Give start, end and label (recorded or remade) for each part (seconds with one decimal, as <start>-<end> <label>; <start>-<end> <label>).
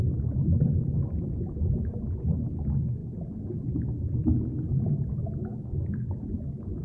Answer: 0.0-6.8 recorded